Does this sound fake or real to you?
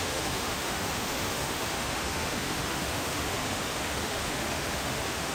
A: fake